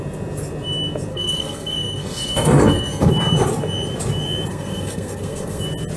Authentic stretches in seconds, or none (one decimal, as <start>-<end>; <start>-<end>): 0.0-1.1; 3.1-4.5; 5.6-6.0